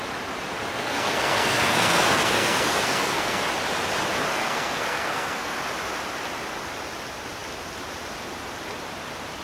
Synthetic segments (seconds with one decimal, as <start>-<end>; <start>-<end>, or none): 0.7-3.4; 4.3-5.6